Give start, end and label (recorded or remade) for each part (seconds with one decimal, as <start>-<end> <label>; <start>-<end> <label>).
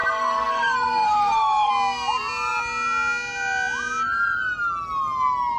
0.0-1.7 remade; 1.7-5.6 recorded